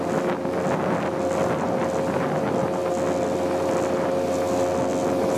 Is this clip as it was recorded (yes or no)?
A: yes